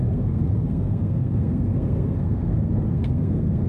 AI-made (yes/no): yes